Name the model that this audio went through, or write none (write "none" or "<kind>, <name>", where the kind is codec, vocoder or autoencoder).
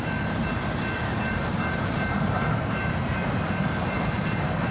vocoder, BigVGAN v2